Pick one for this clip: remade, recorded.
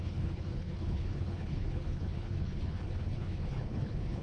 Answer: remade